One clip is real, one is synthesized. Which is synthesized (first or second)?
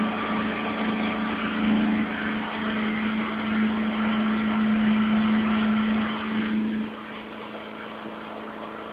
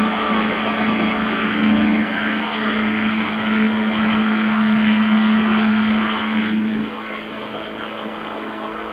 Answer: second